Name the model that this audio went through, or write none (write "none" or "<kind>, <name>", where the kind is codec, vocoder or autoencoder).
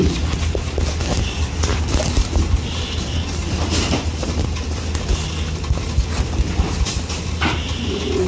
none